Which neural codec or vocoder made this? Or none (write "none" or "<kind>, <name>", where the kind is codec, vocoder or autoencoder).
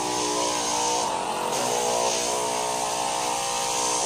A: none